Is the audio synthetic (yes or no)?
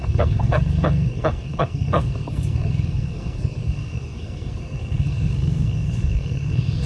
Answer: yes